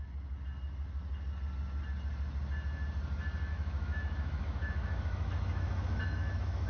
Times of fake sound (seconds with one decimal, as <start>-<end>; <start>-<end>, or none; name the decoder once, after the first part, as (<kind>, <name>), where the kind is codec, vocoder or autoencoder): 3.5-6.7 (autoencoder, DAC-VAE)